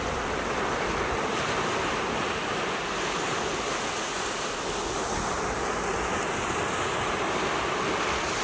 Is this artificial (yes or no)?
no